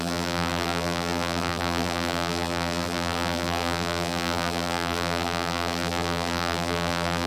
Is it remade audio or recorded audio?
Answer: remade